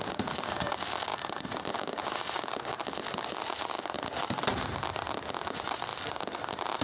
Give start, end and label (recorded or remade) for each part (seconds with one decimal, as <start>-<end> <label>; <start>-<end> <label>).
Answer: 0.0-1.1 recorded; 1.1-1.6 remade; 1.6-5.9 recorded; 5.9-6.8 remade